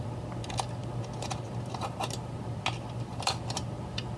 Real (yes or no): yes